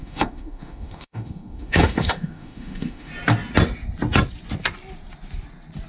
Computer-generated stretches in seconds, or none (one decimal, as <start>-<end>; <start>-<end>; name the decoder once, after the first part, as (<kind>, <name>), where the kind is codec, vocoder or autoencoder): 0.0-3.1 (autoencoder, DAC-VAE)